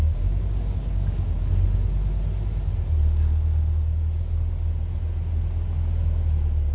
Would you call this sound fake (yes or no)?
no